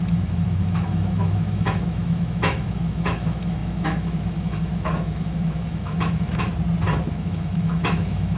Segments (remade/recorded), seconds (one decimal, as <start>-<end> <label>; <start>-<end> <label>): 0.0-6.5 remade; 6.5-7.1 recorded; 7.1-8.4 remade